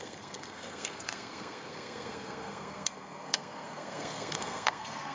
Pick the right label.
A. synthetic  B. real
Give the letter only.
A